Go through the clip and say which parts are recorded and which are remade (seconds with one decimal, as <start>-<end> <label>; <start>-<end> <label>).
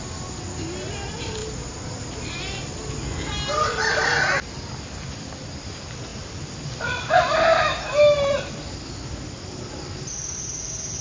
0.0-11.0 recorded